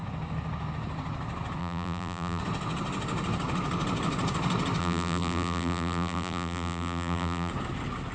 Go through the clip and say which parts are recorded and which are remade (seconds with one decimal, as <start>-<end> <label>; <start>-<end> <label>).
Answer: 0.0-1.6 recorded; 1.6-2.4 remade; 2.4-4.8 recorded; 4.8-7.5 remade; 7.5-8.1 recorded